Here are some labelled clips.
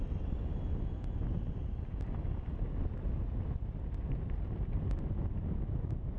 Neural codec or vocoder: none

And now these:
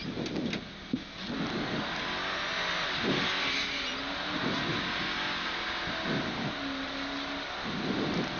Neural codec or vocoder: none